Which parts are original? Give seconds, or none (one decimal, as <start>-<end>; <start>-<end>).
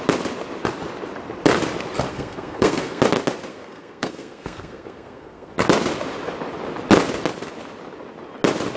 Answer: 0.0-2.1; 3.0-3.5; 5.5-8.8